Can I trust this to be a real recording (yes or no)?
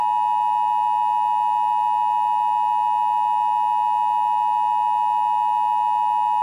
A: yes